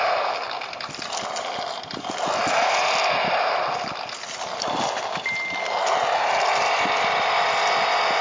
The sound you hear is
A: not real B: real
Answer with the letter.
B